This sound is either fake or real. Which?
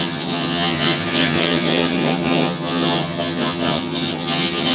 fake